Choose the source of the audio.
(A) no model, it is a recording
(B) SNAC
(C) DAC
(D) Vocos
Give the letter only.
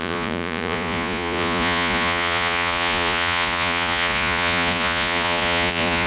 D